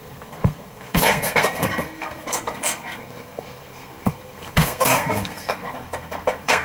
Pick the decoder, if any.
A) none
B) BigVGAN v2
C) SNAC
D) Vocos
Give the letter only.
C